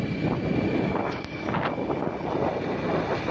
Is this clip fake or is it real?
real